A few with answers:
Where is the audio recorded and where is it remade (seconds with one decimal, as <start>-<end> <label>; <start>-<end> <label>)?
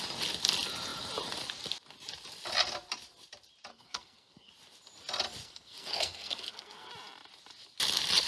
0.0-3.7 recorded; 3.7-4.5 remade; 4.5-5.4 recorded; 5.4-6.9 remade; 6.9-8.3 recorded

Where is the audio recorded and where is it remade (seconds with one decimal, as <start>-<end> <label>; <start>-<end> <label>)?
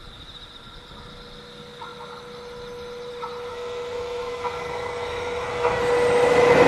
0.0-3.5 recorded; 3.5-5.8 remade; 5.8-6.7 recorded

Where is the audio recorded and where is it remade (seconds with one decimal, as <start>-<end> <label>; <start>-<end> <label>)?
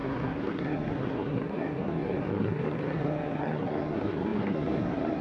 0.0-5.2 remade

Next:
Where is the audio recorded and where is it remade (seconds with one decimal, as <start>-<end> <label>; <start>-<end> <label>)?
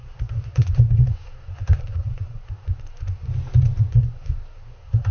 0.0-3.3 remade; 3.3-3.9 recorded; 3.9-5.1 remade